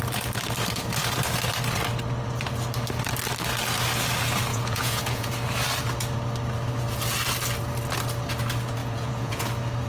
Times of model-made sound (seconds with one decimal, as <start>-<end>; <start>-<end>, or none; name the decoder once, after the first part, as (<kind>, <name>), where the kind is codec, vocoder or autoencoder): 4.5-5.3 (vocoder, Vocos); 8.8-9.5